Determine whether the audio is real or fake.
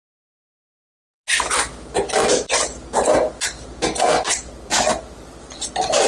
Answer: real